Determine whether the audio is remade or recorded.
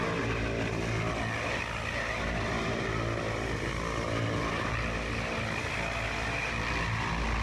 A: recorded